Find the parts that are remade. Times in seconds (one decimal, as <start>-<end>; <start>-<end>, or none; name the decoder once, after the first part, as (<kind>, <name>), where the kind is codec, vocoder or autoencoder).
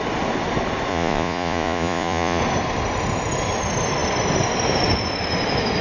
0.9-2.4 (vocoder, Vocos)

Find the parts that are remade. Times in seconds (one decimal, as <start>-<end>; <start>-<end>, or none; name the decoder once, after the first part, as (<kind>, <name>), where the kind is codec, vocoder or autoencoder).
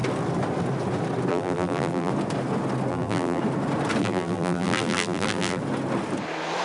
1.3-2.1 (vocoder, BigVGAN v2); 2.9-3.4; 4.0-5.6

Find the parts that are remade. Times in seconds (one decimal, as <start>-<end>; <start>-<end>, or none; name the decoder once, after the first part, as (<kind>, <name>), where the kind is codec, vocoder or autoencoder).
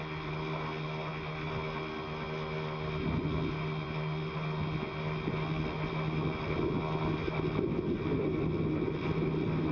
none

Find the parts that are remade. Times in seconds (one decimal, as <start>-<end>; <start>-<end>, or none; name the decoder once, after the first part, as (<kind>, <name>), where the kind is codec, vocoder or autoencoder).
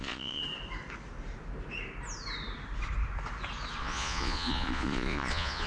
0.0-0.4 (vocoder, Vocos); 3.8-5.7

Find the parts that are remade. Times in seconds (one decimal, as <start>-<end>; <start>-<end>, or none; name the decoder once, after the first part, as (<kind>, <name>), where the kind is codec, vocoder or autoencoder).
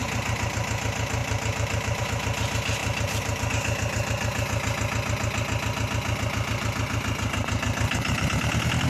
1.2-2.0 (vocoder, BigVGAN v2); 2.8-3.5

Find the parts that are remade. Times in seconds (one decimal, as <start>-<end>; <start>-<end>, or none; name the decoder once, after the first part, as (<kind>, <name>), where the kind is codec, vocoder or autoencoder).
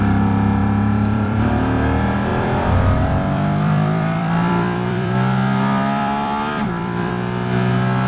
0.6-1.5 (vocoder, BigVGAN v2); 2.3-7.1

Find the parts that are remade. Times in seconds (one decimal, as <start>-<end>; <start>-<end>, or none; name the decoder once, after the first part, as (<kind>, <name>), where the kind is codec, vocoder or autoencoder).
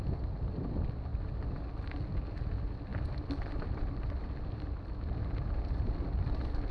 1.1-1.6 (vocoder, BigVGAN v2)